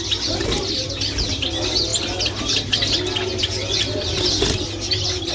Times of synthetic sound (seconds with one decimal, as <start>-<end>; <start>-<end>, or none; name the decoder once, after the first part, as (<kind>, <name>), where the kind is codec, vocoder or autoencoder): none